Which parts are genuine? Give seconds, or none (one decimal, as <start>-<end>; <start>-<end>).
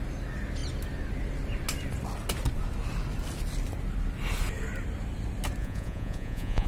0.0-5.6